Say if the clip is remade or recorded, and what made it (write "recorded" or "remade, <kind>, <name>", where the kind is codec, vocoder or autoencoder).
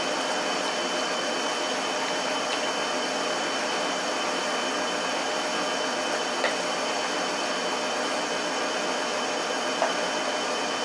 recorded